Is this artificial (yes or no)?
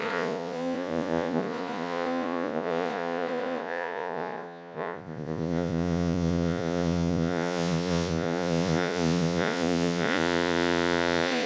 yes